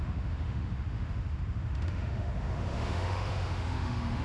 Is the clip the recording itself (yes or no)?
no